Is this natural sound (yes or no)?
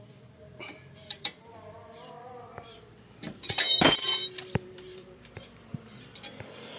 no